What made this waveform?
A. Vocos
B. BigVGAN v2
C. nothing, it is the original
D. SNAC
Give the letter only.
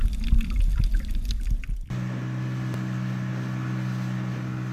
C